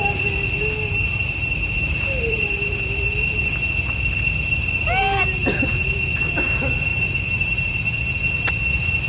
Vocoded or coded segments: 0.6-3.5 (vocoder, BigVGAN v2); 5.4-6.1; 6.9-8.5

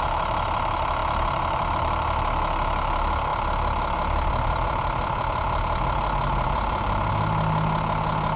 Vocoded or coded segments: 3.3-7.1 (vocoder, BigVGAN v2)

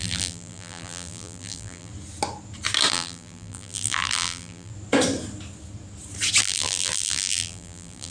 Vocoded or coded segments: 0.0-1.9 (vocoder, BigVGAN v2); 2.9-4.7; 6.4-8.1

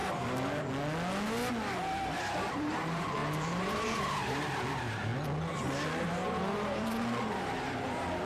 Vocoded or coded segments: 2.5-5.1 (vocoder, BigVGAN v2); 6.0-8.3

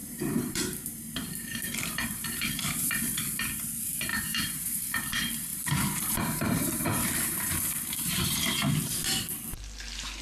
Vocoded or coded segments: 0.0-0.6 (vocoder, BigVGAN v2); 1.2-2.9; 4.1-4.8; 5.5-8.2

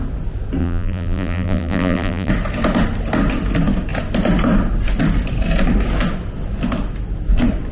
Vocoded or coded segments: 0.6-2.3 (vocoder, BigVGAN v2)